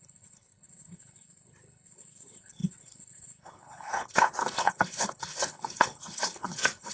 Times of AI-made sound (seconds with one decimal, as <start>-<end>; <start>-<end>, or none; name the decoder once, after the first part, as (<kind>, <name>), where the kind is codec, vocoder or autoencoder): 0.0-6.9 (codec, HILCodec)